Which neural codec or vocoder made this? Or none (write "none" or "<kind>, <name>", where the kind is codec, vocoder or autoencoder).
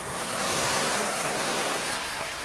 codec, SNAC